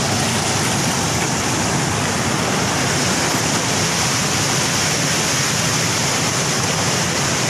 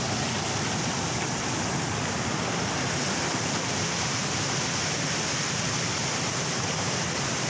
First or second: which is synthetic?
second